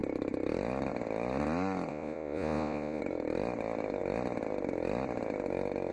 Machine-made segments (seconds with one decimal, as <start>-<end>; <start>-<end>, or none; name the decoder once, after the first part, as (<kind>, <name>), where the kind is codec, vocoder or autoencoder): 1.9-3.0 (vocoder, Vocos)